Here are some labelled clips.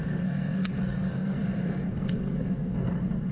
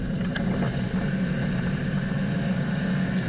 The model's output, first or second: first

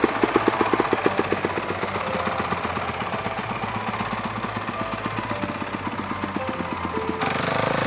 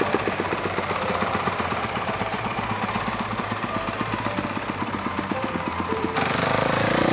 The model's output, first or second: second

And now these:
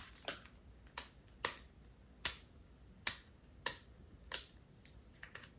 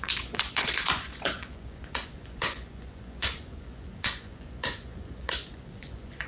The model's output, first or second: second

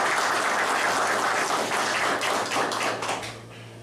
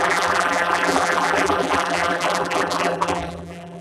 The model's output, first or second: second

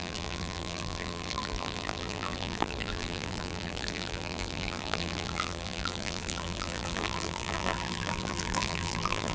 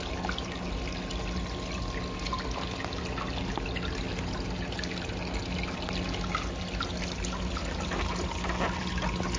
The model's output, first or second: first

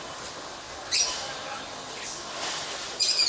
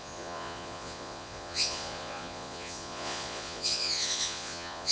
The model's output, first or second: second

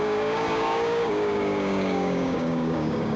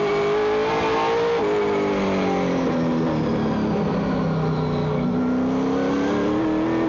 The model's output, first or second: first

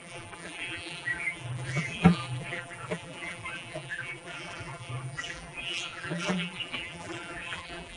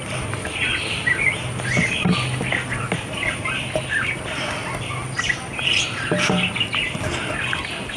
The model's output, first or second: first